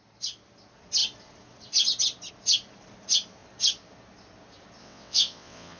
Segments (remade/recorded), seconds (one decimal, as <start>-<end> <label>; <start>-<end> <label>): 0.0-4.8 recorded; 4.8-5.8 remade